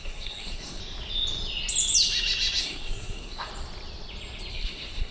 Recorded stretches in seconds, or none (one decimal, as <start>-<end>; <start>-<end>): 0.8-2.6; 3.5-4.5